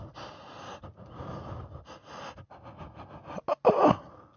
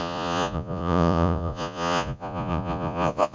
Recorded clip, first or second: first